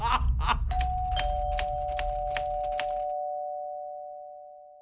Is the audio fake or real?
real